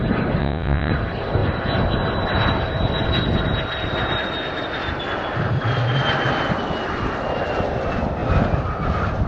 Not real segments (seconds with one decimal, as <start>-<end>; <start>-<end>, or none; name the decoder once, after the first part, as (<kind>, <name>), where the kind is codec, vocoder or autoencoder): 0.4-0.9 (vocoder, WaveNeXt)